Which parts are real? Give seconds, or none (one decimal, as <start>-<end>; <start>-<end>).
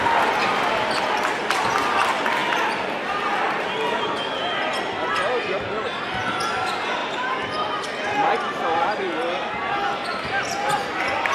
0.0-11.3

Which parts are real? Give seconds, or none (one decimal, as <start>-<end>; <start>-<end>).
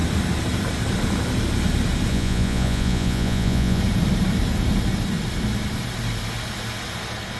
0.0-2.1; 3.8-7.4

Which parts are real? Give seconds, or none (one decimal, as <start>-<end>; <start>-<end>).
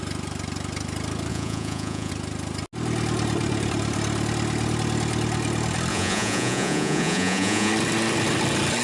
0.0-1.3; 2.1-5.9; 7.7-8.8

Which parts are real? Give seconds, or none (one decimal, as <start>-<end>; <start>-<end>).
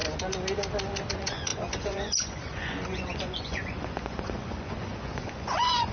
0.0-1.1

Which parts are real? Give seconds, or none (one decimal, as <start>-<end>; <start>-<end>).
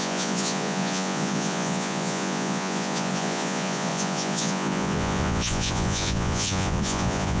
none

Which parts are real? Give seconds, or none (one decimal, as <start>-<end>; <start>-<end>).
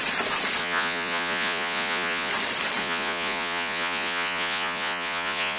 0.0-0.6; 2.3-2.8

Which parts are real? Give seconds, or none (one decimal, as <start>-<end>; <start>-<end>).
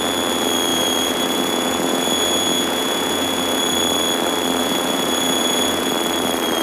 0.0-0.7; 3.6-4.6; 5.9-6.6